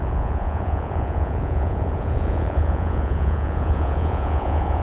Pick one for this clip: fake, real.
fake